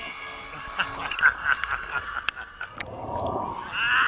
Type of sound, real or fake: real